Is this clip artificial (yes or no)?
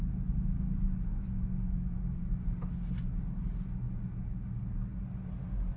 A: no